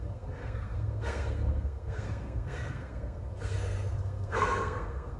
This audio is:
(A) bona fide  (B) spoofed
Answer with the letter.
B